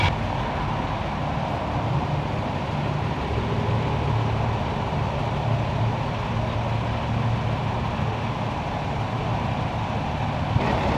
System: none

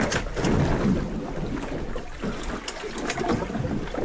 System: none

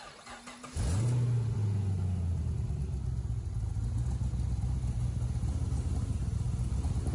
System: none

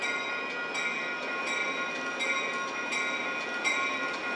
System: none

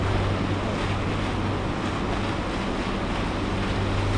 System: none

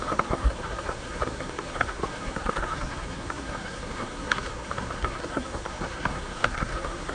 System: codec, SNAC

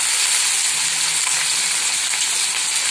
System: none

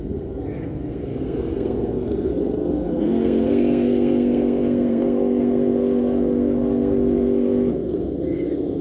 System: codec, SNAC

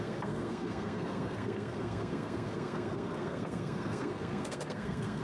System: codec, SNAC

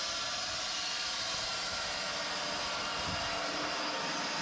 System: none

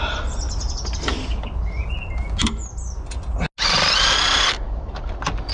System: none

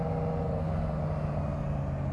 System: none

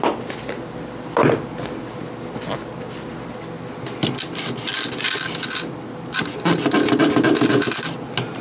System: none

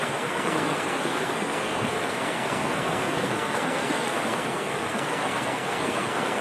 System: codec, SNAC